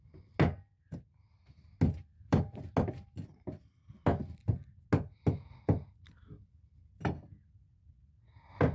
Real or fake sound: real